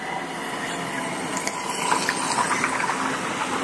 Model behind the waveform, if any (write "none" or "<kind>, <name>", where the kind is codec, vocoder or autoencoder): none